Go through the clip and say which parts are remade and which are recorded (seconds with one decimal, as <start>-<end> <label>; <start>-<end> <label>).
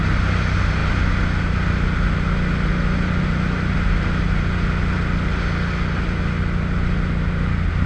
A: 0.0-7.9 recorded